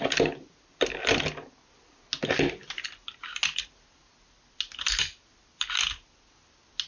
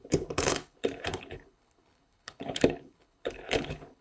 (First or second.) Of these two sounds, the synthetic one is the second